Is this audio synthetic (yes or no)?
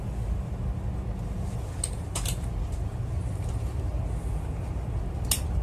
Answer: no